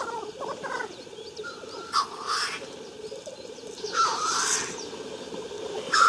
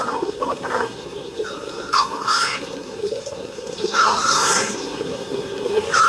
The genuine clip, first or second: first